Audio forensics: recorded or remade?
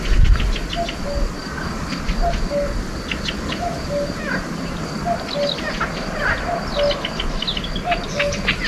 recorded